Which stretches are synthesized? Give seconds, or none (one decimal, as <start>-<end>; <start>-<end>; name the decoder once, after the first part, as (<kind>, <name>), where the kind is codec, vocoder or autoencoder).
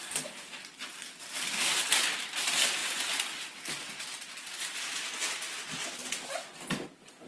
none